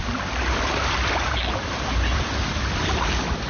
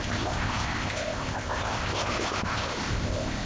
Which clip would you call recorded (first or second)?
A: first